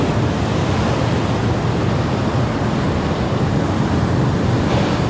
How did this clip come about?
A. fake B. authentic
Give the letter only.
B